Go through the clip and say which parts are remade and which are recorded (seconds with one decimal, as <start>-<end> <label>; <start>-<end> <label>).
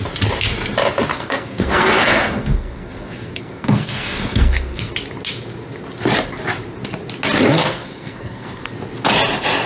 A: 0.0-1.1 recorded; 1.1-4.9 remade; 4.9-7.6 recorded; 7.6-8.7 remade; 8.7-9.7 recorded